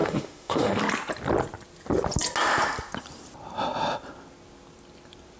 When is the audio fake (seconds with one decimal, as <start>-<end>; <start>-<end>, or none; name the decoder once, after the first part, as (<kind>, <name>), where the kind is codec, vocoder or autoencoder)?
0.0-0.8 (autoencoder, DAC-VAE)

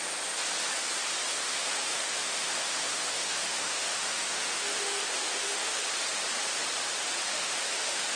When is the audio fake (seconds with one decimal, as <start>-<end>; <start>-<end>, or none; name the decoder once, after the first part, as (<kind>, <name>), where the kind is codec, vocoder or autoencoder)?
1.3-5.8 (autoencoder, DAC-VAE); 7.3-8.2

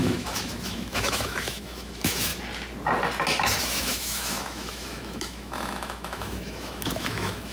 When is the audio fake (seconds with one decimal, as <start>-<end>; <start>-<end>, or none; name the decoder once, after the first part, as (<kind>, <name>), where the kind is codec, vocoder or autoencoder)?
0.0-2.3 (autoencoder, DAC-VAE); 3.6-7.5

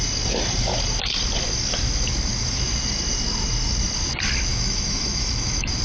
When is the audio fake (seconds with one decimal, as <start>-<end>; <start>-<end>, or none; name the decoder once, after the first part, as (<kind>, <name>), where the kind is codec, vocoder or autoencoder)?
4.5-5.8 (autoencoder, DAC-VAE)